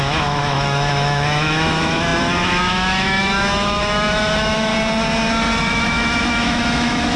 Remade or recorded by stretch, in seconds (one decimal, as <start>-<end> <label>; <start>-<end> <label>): 0.0-4.7 remade; 4.7-5.6 recorded; 5.6-7.2 remade